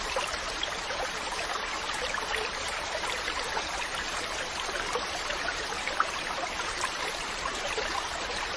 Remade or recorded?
remade